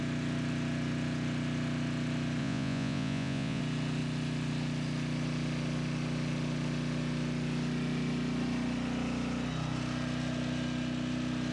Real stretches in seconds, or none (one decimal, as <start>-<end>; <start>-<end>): 0.0-2.4; 3.6-11.5